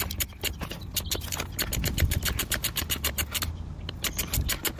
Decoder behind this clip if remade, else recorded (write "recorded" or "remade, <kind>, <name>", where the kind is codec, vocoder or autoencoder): recorded